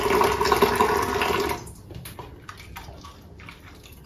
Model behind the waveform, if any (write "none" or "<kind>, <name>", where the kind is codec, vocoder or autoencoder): none